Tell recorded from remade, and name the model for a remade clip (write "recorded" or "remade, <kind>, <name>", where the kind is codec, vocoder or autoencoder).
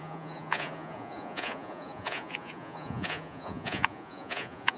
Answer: remade, vocoder, Vocos